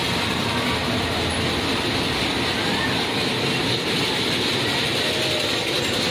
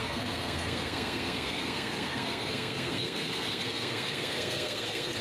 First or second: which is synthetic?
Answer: second